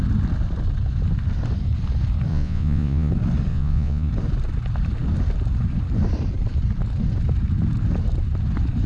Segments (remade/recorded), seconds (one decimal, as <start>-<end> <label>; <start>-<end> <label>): 0.0-2.3 recorded; 2.3-3.1 remade; 3.1-3.5 recorded; 3.5-4.1 remade; 4.1-8.9 recorded